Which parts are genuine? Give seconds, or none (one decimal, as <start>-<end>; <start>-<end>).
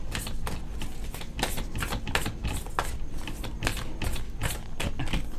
0.0-5.4